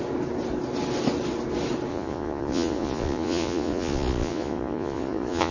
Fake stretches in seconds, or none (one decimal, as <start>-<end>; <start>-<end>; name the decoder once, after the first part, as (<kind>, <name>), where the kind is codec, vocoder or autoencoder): 1.9-5.5 (vocoder, Vocos)